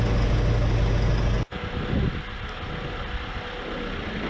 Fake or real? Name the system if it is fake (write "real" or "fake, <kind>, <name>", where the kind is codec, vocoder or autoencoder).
real